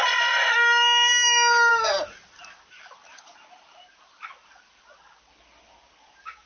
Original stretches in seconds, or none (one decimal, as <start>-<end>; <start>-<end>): 0.0-6.5